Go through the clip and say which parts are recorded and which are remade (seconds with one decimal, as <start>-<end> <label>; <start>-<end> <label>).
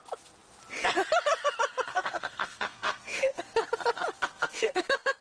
0.0-1.9 recorded; 1.9-3.4 remade; 3.4-4.3 recorded; 4.3-5.2 remade